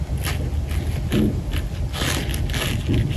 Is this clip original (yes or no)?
yes